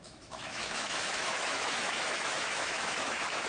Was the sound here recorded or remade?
remade